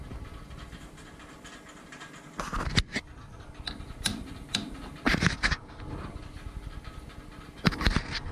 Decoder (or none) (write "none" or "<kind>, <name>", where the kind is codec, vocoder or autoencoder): none